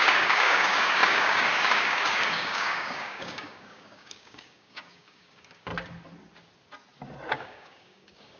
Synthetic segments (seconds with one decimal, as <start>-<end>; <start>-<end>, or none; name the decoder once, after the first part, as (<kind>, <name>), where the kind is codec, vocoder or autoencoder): 0.0-5.7 (codec, DAC); 7.3-8.4